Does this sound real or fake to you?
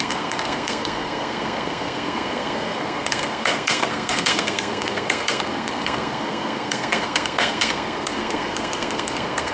fake